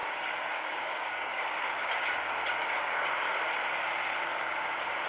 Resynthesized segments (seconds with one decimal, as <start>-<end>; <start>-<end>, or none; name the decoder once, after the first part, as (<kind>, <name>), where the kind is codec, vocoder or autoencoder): 0.0-2.2 (codec, DAC); 2.6-3.3